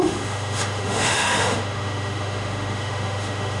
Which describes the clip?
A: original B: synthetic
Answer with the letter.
B